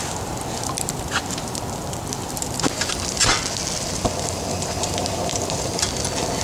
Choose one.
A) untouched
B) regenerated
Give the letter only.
A